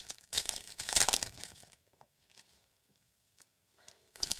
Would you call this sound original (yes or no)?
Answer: no